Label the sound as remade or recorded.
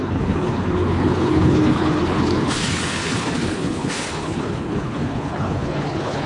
remade